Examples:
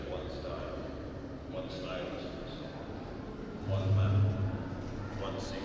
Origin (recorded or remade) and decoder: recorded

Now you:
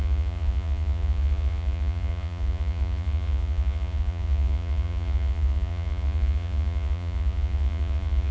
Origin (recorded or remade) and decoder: remade, vocoder, Vocos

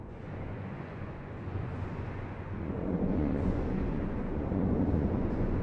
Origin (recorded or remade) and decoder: remade, vocoder, Vocos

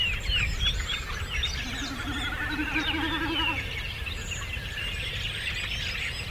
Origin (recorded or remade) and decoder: recorded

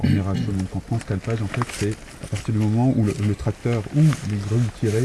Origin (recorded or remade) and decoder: recorded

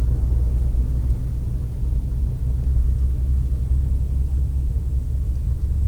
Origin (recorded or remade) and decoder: recorded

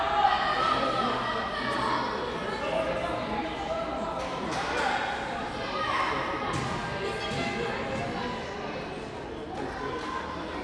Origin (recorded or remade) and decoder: recorded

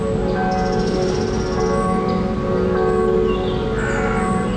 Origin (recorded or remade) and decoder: recorded